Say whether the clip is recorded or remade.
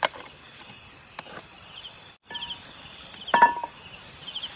recorded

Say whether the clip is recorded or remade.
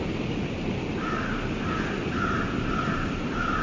recorded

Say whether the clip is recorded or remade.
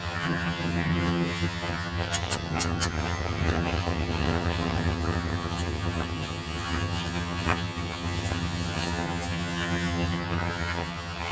remade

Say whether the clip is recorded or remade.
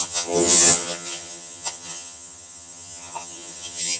remade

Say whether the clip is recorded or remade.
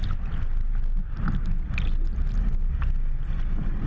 recorded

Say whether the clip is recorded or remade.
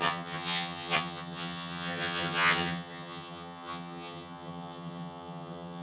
remade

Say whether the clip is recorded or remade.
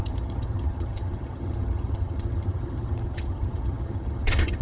remade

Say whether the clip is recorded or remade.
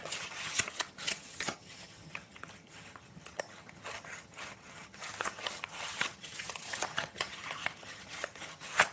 remade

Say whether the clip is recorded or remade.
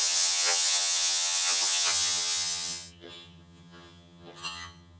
remade